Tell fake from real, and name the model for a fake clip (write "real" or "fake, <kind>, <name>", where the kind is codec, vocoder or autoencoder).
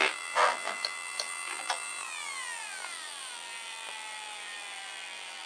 fake, vocoder, BigVGAN v2